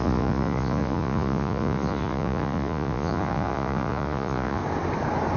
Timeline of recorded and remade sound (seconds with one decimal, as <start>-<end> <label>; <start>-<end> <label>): 0.0-4.6 remade; 4.6-5.4 recorded